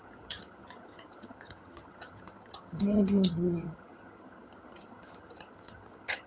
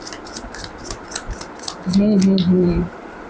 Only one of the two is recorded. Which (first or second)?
second